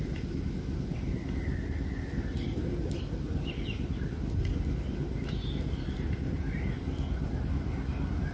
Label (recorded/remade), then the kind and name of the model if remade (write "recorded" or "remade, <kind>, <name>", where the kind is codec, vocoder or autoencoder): recorded